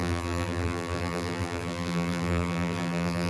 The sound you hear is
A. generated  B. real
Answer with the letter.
A